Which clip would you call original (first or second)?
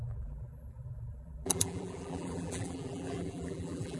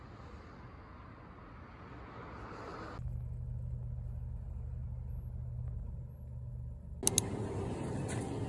second